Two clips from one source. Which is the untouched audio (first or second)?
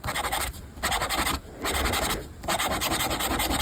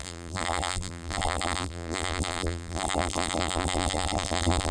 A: first